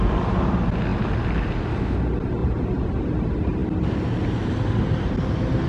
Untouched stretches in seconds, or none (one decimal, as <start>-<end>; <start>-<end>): 0.0-2.4; 2.9-5.7